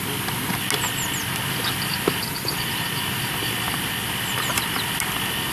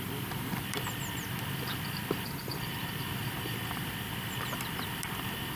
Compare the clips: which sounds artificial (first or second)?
second